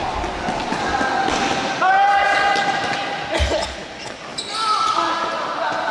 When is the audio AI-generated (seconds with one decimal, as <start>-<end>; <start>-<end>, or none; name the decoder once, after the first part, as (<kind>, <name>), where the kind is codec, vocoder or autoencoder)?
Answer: none